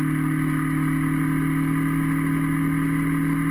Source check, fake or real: real